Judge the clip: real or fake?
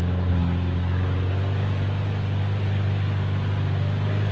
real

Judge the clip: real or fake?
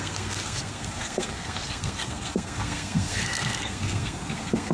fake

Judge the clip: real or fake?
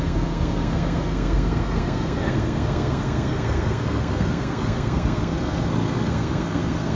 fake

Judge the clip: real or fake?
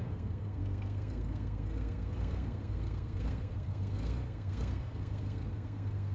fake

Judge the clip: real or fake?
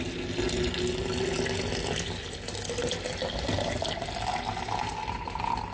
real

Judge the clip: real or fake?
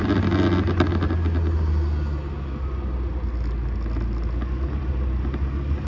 real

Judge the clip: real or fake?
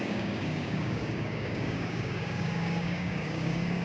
fake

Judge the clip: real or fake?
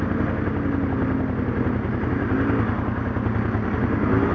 real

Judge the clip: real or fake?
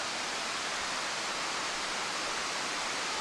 real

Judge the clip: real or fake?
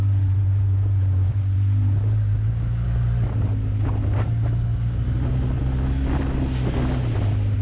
real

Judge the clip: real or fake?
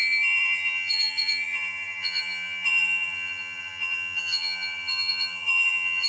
fake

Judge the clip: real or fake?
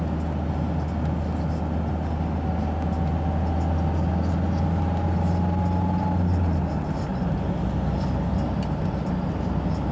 real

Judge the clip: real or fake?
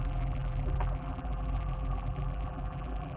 fake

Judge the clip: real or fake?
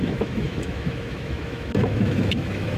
fake